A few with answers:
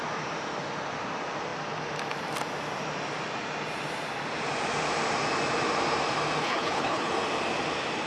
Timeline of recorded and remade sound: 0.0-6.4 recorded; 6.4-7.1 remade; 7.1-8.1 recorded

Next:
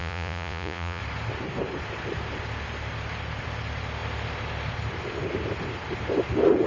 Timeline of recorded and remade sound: 0.0-1.0 remade; 1.0-6.7 recorded

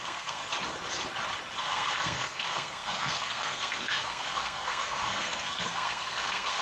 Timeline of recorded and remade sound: 0.0-0.4 remade; 0.4-1.6 recorded; 1.6-6.6 remade

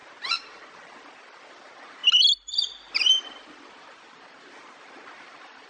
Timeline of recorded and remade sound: 0.0-1.5 recorded; 1.5-2.0 remade; 2.0-3.8 recorded; 3.8-5.7 remade

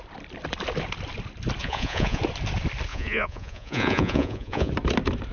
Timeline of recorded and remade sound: 0.0-1.6 recorded; 1.6-2.2 remade; 2.2-2.9 recorded; 2.9-4.7 remade; 4.7-5.3 recorded